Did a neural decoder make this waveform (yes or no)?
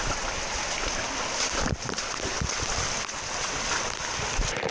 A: no